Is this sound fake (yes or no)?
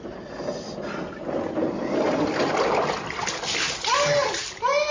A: no